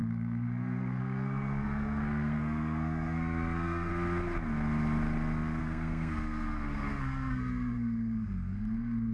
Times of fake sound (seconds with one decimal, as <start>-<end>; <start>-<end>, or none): 0.0-3.9; 5.6-9.1